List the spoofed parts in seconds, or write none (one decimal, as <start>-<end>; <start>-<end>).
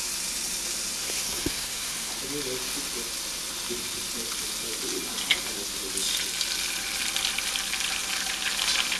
1.0-2.1